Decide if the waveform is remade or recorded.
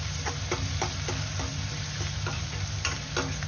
recorded